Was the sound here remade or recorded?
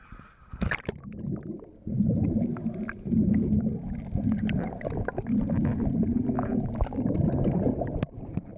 recorded